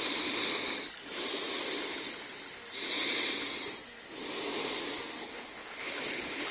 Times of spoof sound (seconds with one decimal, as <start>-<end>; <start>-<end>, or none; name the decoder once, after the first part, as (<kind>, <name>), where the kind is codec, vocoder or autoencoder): 5.2-6.5 (codec, HILCodec)